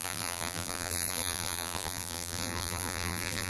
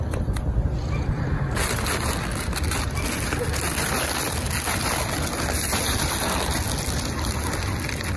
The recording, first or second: second